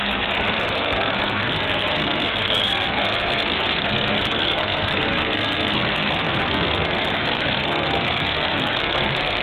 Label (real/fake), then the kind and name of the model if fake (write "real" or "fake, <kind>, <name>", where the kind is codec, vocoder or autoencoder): fake, codec, SNAC